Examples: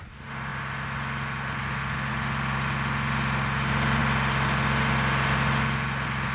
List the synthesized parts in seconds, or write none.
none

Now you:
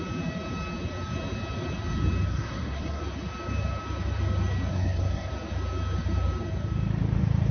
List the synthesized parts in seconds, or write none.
2.3-3.0 (codec, SNAC); 4.7-5.3

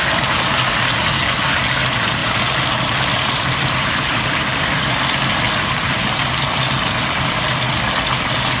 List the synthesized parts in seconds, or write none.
2.2-6.3 (vocoder, BigVGAN v2)